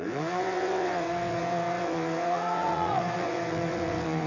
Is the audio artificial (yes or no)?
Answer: yes